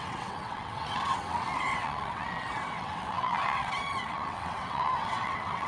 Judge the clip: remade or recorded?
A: remade